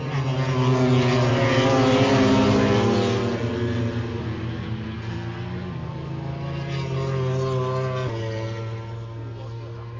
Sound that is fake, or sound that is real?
real